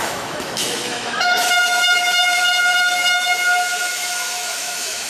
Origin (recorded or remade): remade